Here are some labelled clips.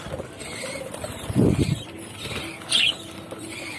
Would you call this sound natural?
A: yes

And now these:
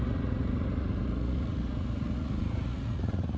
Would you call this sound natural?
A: no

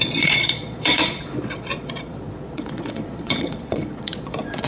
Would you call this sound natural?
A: no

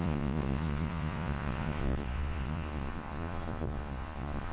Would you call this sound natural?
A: no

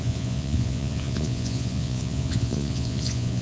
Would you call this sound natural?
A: no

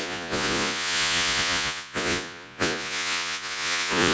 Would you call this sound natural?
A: no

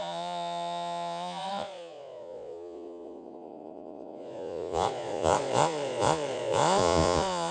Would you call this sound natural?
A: no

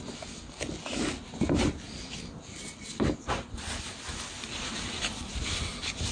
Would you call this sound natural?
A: yes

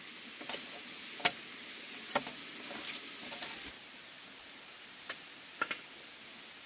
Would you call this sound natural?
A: yes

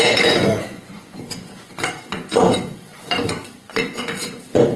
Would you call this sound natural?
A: no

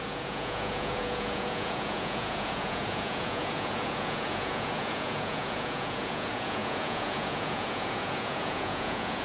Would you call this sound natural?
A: no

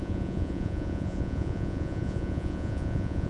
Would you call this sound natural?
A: no